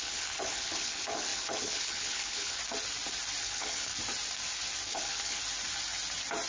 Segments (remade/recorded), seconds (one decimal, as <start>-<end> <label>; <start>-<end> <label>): 0.0-2.6 remade; 2.6-3.4 recorded; 3.4-3.9 remade; 3.9-4.9 recorded; 4.9-5.4 remade; 5.4-6.5 recorded